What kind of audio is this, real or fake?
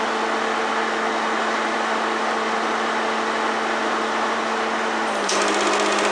real